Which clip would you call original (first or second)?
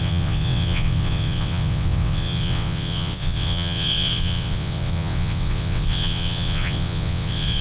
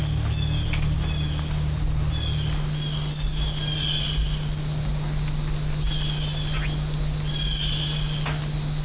second